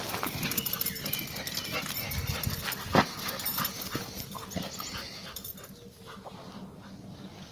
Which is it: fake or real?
real